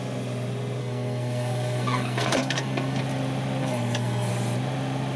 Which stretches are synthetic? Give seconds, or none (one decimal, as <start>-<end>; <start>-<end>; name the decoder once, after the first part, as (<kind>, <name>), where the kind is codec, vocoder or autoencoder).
0.8-3.0 (codec, SNAC); 3.6-4.3